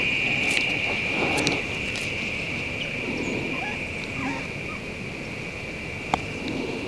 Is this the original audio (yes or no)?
yes